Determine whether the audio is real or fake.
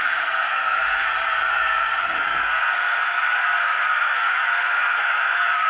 fake